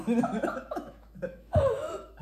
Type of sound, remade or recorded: remade